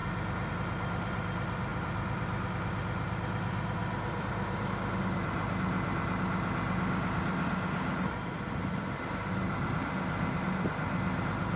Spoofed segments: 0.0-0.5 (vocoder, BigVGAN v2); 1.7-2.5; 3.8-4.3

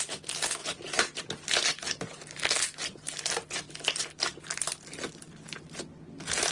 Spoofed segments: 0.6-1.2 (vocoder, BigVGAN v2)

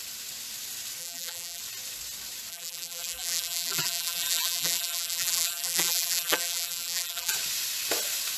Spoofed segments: 1.0-1.6 (vocoder, BigVGAN v2); 2.5-7.3

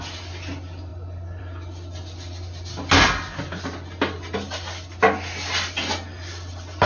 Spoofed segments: none